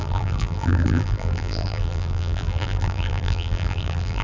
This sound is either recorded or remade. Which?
remade